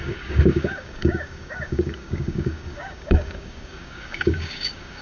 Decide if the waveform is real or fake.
fake